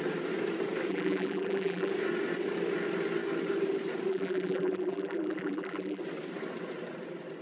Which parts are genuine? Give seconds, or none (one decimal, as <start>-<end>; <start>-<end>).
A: 0.0-0.9; 1.9-4.1; 6.0-7.4